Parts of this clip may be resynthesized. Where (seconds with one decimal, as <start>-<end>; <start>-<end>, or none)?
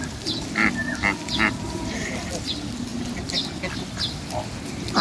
none